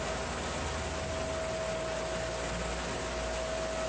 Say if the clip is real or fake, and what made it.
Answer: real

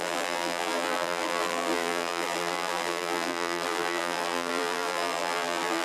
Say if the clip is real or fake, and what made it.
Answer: fake, vocoder, BigVGAN v2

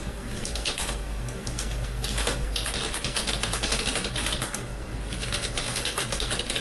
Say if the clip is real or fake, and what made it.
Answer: fake, codec, SNAC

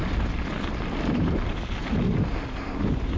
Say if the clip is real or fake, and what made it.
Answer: real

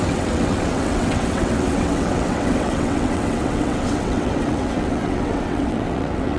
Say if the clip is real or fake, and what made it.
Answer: fake, vocoder, WaveNeXt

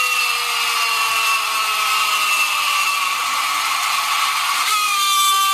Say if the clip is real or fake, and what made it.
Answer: real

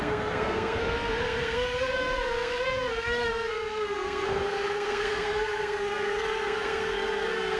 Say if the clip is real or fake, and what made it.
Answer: fake, codec, SNAC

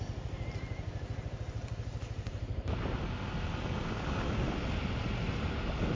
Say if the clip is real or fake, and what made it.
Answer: real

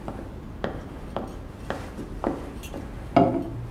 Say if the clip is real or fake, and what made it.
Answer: real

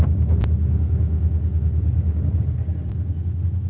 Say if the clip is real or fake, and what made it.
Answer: real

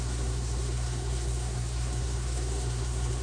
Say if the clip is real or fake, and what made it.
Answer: fake, codec, SNAC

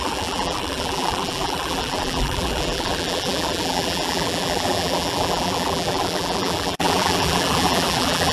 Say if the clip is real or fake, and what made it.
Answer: fake, vocoder, BigVGAN v2